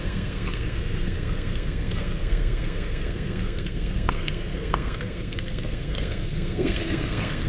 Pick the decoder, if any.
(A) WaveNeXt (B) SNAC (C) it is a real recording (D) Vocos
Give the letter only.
B